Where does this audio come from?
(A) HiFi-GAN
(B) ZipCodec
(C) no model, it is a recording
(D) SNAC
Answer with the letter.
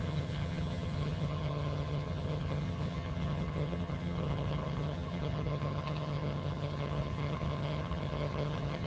A